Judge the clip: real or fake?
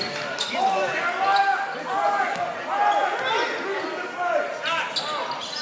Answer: real